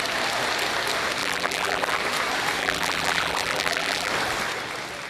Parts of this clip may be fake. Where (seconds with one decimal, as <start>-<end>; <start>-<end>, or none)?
1.2-2.0; 2.6-4.1